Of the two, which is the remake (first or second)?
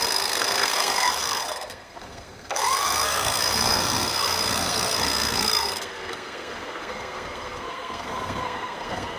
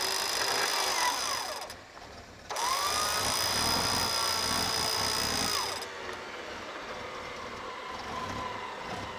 first